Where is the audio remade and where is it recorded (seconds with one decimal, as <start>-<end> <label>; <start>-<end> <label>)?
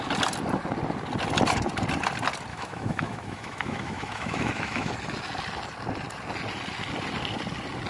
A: 0.0-2.5 recorded; 2.5-4.9 remade; 4.9-7.9 recorded